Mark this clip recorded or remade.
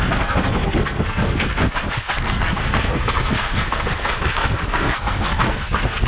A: remade